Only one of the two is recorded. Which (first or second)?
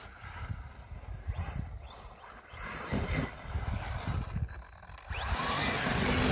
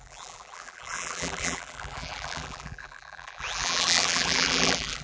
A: first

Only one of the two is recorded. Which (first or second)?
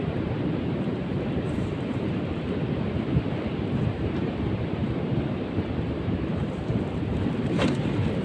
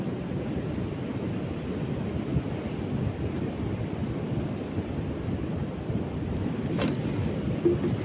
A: second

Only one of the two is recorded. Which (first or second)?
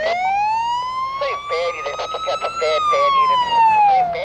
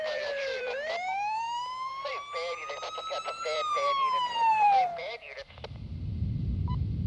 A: first